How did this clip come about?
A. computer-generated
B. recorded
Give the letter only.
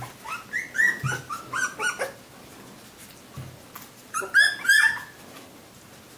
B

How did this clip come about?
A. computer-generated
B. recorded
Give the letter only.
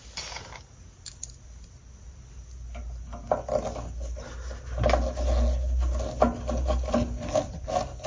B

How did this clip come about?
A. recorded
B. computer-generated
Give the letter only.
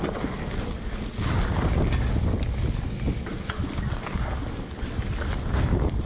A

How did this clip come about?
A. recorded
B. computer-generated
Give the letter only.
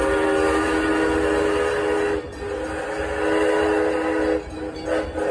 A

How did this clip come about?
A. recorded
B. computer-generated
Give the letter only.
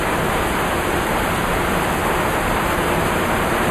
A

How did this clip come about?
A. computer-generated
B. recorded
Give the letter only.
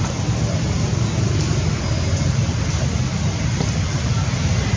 B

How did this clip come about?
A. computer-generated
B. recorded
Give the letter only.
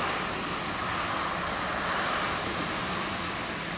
B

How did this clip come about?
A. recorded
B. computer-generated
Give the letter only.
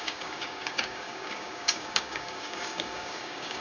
B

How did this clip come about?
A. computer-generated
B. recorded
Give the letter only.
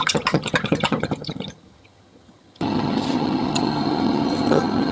A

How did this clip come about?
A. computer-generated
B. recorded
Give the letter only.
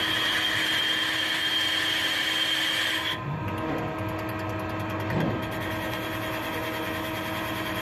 B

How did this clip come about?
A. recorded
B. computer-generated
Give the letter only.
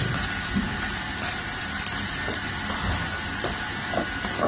A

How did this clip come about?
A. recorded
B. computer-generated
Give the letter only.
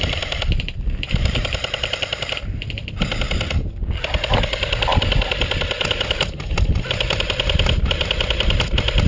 A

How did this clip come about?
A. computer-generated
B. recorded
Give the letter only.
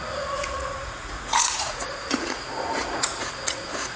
A